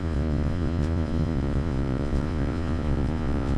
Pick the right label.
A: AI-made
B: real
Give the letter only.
A